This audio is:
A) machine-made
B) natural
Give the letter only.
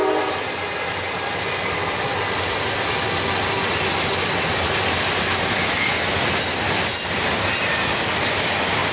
B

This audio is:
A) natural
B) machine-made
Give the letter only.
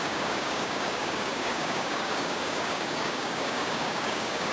B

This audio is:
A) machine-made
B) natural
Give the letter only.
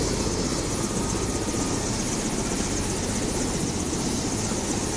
B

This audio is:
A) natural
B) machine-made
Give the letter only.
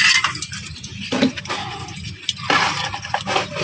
A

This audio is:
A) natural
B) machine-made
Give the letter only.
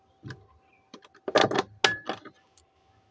A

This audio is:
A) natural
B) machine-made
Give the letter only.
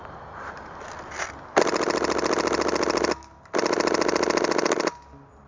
A